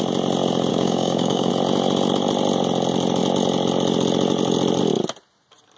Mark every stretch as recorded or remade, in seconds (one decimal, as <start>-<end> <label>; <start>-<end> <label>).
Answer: 0.0-0.7 recorded; 0.7-1.5 remade; 1.5-5.8 recorded